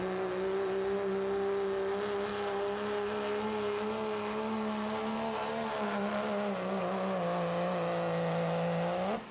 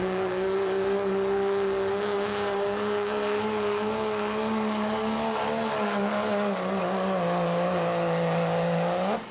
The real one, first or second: first